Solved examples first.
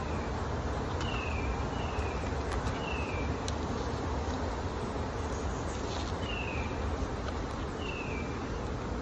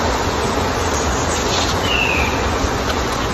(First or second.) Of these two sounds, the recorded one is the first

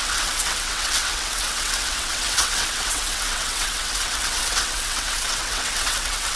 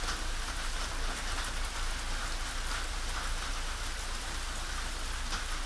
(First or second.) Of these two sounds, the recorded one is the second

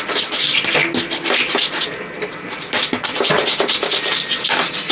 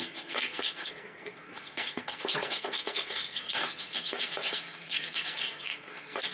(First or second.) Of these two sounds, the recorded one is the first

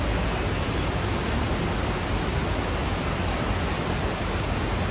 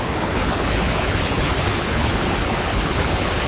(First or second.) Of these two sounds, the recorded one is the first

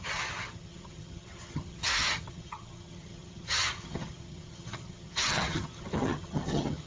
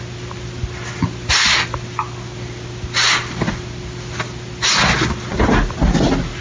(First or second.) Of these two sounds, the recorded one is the second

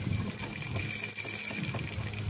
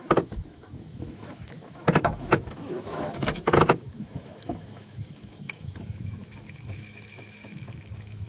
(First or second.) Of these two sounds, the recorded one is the first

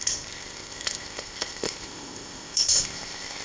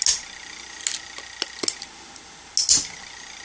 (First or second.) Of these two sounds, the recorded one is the second